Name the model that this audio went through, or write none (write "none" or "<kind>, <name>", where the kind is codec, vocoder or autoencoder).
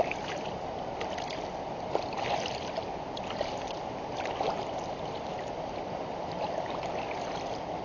none